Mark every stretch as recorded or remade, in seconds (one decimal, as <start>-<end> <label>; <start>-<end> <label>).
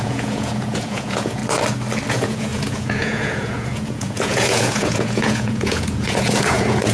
0.0-1.4 remade; 1.4-2.1 recorded; 2.1-6.9 remade